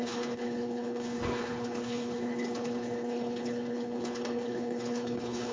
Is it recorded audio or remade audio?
remade